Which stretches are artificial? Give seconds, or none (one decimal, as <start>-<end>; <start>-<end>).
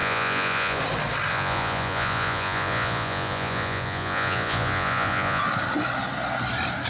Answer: 0.0-0.8; 1.3-5.4